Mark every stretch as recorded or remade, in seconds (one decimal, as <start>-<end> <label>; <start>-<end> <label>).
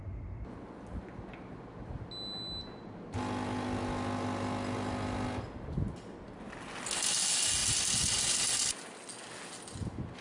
0.0-10.2 recorded